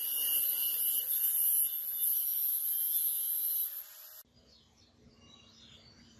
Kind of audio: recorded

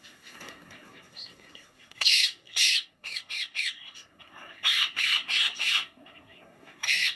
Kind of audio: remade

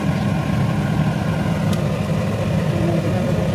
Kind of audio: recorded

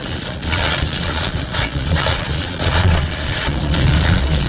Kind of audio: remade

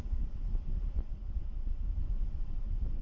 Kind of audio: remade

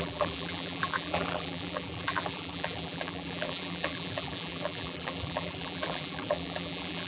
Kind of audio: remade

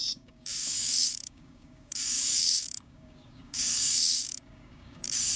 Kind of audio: remade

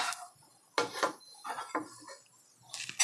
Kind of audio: recorded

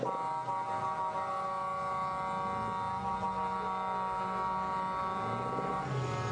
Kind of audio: recorded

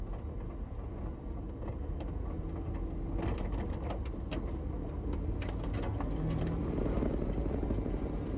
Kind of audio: recorded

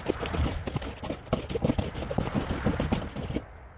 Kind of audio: recorded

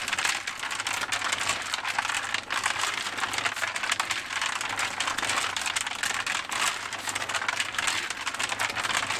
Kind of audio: recorded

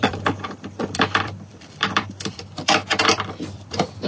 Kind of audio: remade